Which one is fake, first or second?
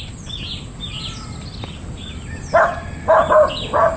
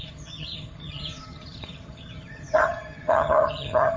second